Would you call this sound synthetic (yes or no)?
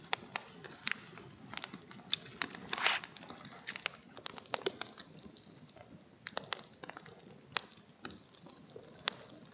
no